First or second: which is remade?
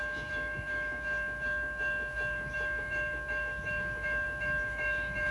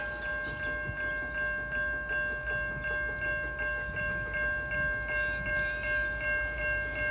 first